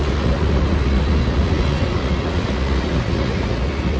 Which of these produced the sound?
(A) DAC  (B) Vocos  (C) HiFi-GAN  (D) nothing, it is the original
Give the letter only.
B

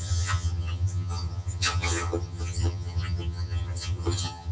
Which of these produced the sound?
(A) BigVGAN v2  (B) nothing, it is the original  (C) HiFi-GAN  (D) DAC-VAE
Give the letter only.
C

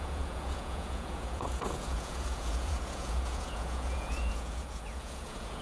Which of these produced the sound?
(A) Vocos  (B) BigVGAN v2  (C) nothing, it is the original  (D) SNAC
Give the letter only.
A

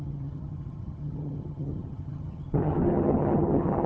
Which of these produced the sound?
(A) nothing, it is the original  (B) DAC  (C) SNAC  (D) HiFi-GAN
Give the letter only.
D